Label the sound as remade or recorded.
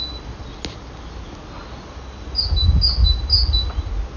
recorded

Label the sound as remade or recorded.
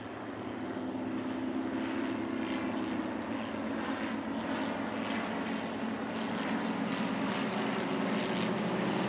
recorded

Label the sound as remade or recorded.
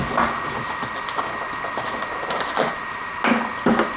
recorded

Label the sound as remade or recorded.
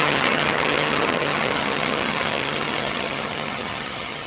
remade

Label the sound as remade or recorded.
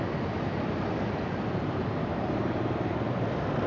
recorded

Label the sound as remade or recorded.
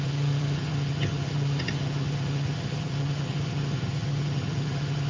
remade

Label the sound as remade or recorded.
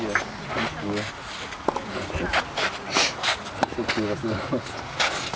recorded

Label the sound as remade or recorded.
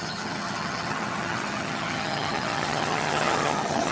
remade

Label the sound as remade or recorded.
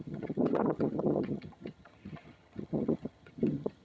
remade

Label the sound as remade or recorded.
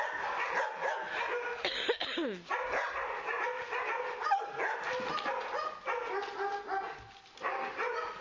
recorded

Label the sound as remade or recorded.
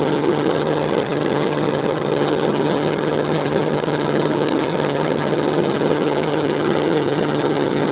remade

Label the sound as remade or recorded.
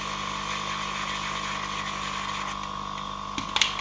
recorded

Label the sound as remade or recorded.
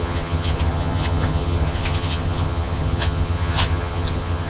remade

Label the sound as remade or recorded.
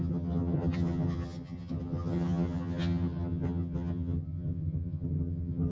remade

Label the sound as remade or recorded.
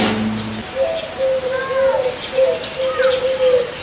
recorded